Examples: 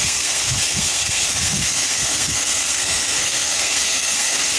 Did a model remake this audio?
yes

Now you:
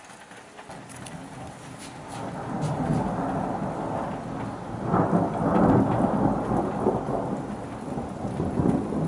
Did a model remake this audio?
no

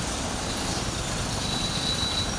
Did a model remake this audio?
no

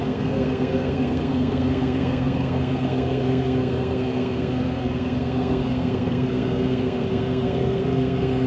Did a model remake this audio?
yes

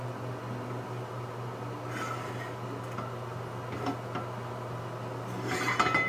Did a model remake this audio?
no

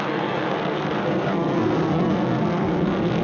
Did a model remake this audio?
yes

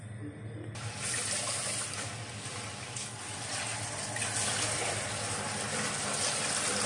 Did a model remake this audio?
no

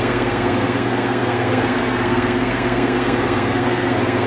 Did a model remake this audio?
yes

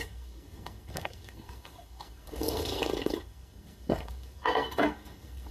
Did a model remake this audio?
yes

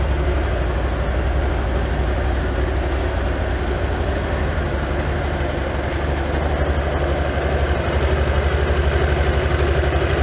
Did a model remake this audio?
no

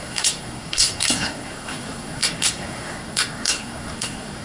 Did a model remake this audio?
yes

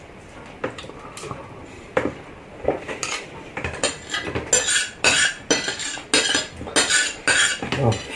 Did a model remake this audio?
no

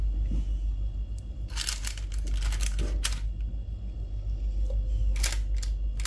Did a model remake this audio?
no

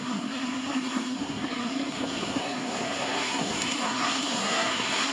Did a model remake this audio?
yes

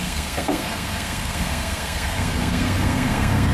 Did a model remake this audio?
yes